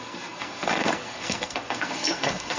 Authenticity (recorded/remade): remade